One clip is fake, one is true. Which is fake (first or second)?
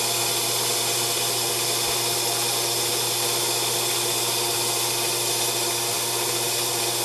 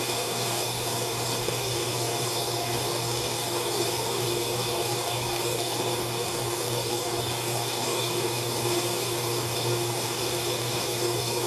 second